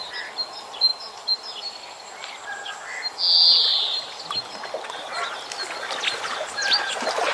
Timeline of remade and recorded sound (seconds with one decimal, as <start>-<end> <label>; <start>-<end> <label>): 0.0-0.9 recorded; 0.9-2.8 remade; 2.8-3.7 recorded; 3.7-4.2 remade; 4.2-7.3 recorded